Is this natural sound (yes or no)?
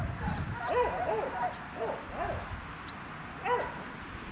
yes